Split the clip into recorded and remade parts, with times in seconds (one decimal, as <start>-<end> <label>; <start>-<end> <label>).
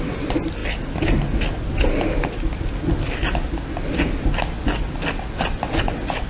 0.0-6.3 recorded